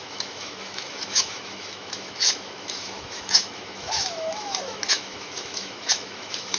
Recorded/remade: remade